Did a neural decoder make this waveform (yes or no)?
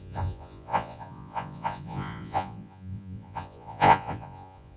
yes